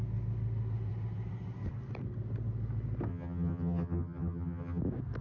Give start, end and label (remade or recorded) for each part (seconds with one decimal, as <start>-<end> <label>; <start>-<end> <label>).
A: 0.0-3.1 recorded; 3.1-4.8 remade; 4.8-5.2 recorded